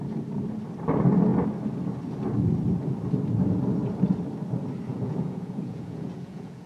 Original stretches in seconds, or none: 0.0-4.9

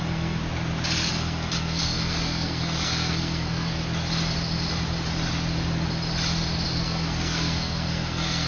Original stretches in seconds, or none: 0.4-1.1; 3.8-6.8

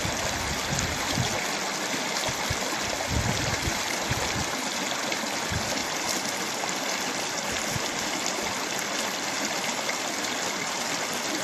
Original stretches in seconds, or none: 0.0-11.4

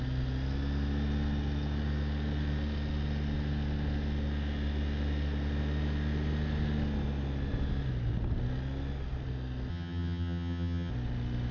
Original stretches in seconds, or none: 0.0-9.7; 10.9-11.5

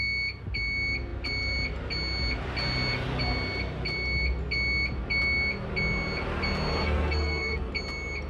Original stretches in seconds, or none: 0.0-6.8; 7.7-8.3

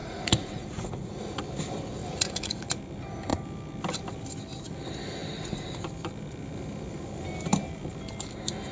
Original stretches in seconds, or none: 1.4-2.0; 2.8-8.7

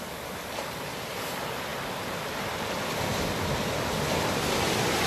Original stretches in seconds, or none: 0.0-5.1